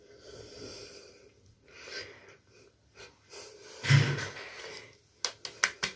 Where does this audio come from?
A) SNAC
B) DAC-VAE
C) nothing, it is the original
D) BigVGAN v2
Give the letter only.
C